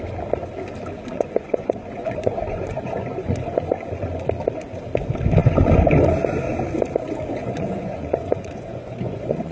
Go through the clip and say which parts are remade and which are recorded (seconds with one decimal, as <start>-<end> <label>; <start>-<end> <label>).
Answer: 0.0-1.1 recorded; 1.1-3.7 remade; 3.7-7.4 recorded; 7.4-9.5 remade